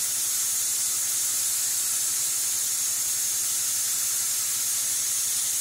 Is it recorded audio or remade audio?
recorded